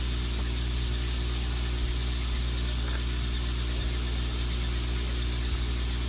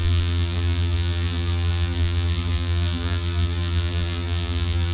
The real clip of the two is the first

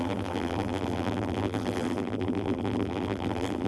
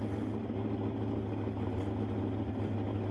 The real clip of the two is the second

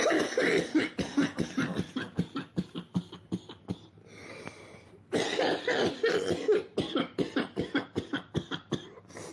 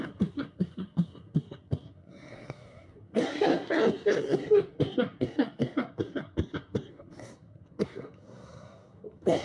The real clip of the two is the first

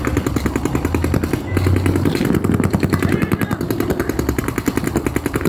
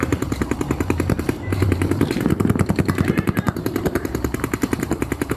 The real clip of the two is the first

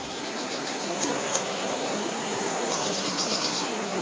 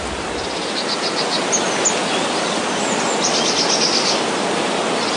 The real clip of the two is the second